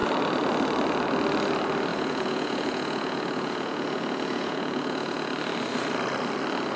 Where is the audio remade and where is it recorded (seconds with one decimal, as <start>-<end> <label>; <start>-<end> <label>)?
0.0-1.9 recorded; 1.9-5.3 remade; 5.3-6.8 recorded